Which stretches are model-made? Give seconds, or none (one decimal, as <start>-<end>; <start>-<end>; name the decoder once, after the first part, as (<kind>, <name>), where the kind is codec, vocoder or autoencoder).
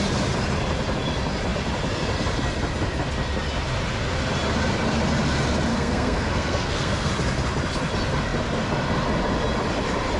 5.7-7.1 (codec, SNAC)